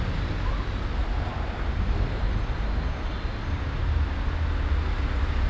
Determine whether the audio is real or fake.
real